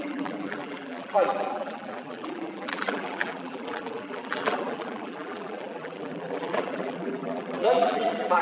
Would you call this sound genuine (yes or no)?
no